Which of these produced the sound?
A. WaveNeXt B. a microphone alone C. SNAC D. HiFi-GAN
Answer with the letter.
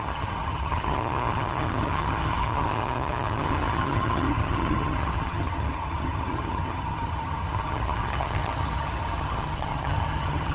D